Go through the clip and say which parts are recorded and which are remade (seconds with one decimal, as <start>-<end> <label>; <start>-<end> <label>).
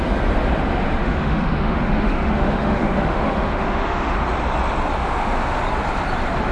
0.0-1.0 recorded; 1.0-4.1 remade; 4.1-5.0 recorded; 5.0-5.6 remade; 5.6-6.5 recorded